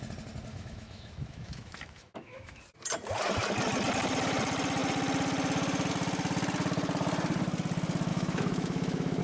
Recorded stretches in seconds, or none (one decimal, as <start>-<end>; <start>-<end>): 0.0-0.5; 2.6-8.1